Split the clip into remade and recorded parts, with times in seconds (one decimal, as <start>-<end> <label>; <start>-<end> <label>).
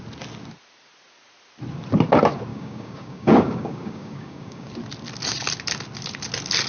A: 0.0-2.5 recorded; 2.5-4.7 remade; 4.7-6.7 recorded